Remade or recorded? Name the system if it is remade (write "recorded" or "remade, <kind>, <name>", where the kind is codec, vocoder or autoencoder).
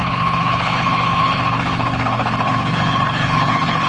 remade, codec, HILCodec